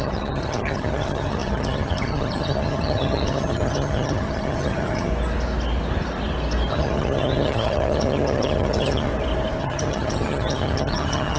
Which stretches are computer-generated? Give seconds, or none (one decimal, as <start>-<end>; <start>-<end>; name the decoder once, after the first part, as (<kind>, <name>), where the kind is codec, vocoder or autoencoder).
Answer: 0.0-5.1 (vocoder, HiFi-GAN); 6.7-9.1; 9.6-11.4